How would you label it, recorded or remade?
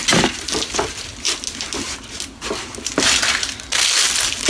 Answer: recorded